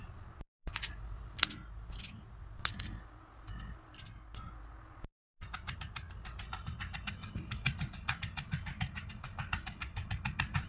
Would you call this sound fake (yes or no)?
no